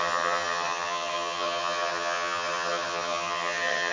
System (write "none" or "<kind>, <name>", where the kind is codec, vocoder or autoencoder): vocoder, HiFi-GAN